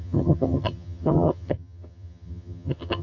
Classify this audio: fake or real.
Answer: fake